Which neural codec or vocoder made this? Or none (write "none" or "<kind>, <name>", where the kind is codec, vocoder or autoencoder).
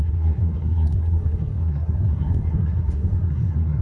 codec, SNAC